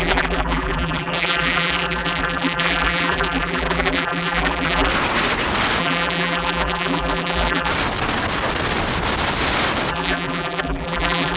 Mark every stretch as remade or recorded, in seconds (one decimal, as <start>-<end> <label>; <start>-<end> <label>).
0.0-4.9 remade; 4.9-5.8 recorded; 5.8-7.7 remade; 7.7-9.9 recorded; 9.9-11.4 remade